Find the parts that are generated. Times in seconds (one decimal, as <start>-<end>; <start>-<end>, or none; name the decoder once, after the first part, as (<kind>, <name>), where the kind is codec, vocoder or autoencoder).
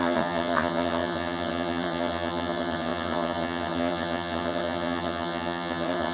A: 0.0-6.1 (vocoder, HiFi-GAN)